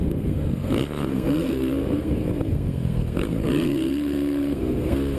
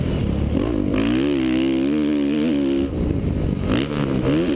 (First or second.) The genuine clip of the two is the second